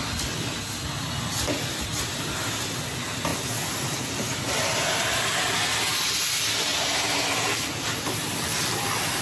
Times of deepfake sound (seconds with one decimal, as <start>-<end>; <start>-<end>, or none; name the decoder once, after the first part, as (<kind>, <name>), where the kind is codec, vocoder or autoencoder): 6.7-8.1 (vocoder, BigVGAN v2)